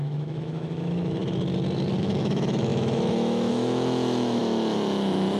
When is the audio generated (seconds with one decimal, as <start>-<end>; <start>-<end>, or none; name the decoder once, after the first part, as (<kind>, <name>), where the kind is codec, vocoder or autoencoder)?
0.0-1.2 (autoencoder, DAC-VAE); 2.0-4.4